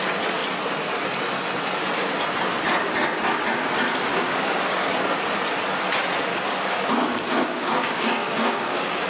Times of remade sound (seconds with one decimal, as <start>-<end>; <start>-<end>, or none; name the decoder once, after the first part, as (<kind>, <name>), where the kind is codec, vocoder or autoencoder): 4.1-5.0 (codec, DAC); 6.3-9.1